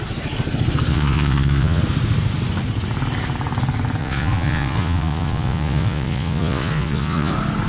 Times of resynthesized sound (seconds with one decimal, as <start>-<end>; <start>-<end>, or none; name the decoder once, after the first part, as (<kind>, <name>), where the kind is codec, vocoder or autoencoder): 0.9-1.8 (vocoder, Vocos); 4.0-7.3